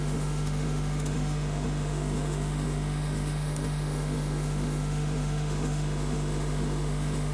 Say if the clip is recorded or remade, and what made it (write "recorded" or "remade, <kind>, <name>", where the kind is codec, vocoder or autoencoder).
remade, autoencoder, DAC-VAE